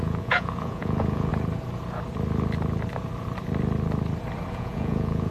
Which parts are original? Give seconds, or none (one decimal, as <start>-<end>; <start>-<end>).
1.3-4.5